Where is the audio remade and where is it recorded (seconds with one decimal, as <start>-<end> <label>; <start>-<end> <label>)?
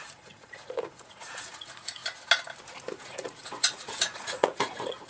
0.0-2.0 remade; 2.0-3.0 recorded; 3.0-5.1 remade